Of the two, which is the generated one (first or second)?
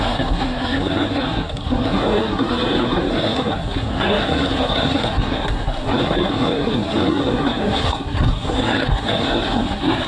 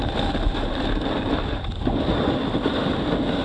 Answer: first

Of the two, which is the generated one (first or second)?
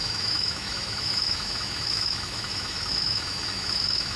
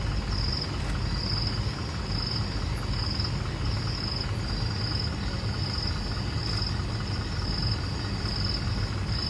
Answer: first